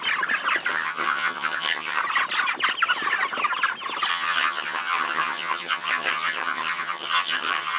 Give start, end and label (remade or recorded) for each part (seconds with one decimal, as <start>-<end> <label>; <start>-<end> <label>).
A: 0.0-0.7 recorded; 0.7-2.0 remade; 2.0-4.1 recorded; 4.1-7.8 remade